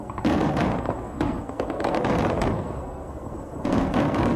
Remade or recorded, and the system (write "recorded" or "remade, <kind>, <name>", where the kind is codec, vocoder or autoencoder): remade, codec, SNAC